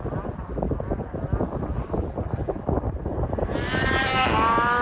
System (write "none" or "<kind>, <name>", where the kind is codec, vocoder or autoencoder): none